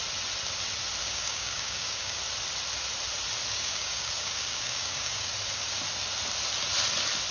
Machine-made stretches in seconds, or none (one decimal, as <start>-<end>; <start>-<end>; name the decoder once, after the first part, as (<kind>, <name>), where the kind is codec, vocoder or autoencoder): 1.0-2.2 (codec, DAC); 3.5-5.3